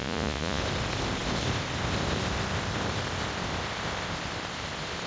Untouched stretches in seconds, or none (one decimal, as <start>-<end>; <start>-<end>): 0.6-5.1